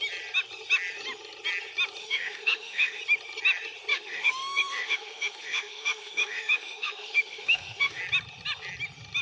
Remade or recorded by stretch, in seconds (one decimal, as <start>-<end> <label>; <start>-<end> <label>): 0.0-2.0 recorded; 2.0-3.0 remade; 3.0-3.9 recorded; 3.9-8.0 remade; 8.0-9.2 recorded